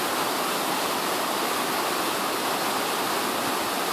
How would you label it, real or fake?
real